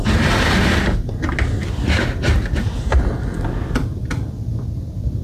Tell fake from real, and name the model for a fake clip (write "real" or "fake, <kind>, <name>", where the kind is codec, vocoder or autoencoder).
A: real